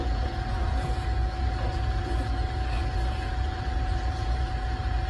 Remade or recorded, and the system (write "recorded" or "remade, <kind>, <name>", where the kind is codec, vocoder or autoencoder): remade, vocoder, Vocos